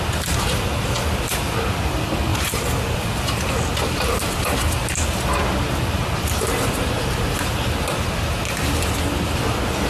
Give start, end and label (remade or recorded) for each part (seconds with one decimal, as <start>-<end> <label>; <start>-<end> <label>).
0.0-2.3 recorded; 2.3-3.0 remade; 3.0-9.9 recorded